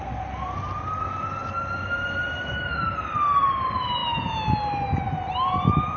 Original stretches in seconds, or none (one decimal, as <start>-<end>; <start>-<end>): 0.0-6.0

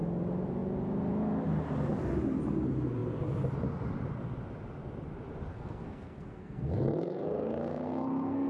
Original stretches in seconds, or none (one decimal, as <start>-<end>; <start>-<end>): 0.0-5.5